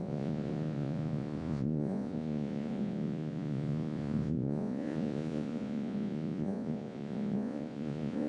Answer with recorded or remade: remade